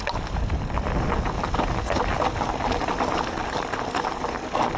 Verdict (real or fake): real